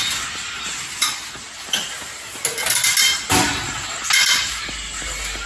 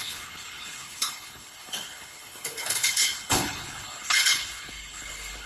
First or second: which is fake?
second